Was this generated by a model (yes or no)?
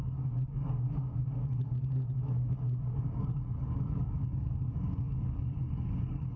yes